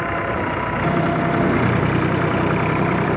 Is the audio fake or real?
real